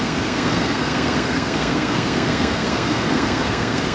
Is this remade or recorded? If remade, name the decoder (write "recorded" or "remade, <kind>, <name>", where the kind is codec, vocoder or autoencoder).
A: remade, codec, SNAC